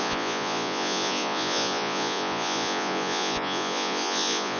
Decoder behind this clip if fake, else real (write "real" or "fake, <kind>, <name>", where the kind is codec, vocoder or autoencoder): fake, vocoder, Vocos